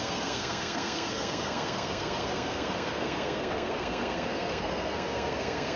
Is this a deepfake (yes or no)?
yes